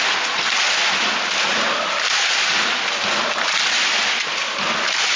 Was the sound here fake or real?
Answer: real